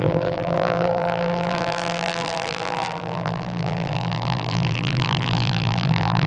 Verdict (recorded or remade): remade